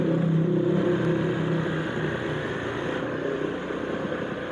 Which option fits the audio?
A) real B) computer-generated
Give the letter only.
A